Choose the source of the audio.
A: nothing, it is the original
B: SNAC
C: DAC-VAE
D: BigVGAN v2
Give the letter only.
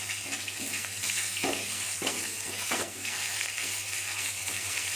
B